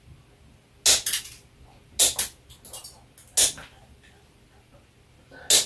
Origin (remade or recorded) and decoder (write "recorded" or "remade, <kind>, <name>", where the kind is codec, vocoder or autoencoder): recorded